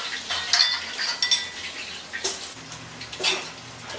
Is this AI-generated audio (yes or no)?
no